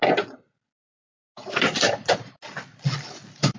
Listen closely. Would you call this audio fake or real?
real